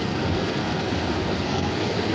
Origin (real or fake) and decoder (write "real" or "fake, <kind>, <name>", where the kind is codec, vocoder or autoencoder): fake, codec, SNAC